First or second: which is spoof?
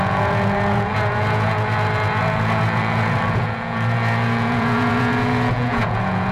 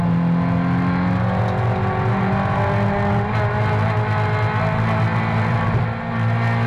first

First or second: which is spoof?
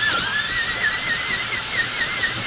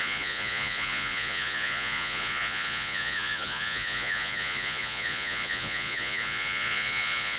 second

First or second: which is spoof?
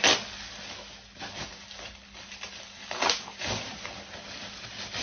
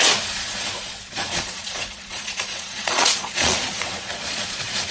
second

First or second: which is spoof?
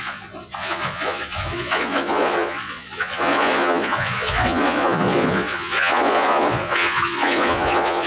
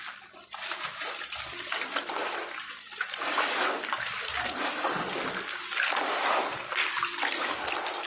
first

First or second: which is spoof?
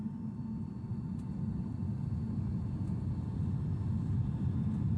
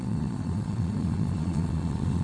second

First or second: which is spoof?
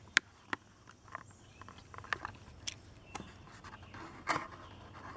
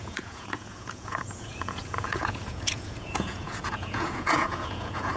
second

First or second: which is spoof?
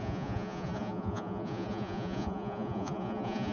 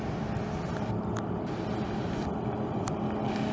first